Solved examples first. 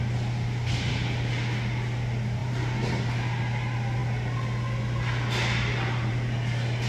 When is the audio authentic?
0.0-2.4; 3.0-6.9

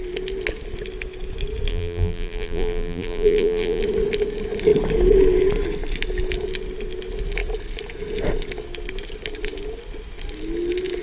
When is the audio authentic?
0.0-1.7; 3.8-11.0

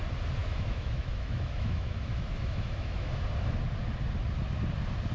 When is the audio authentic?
0.0-0.4; 3.2-5.1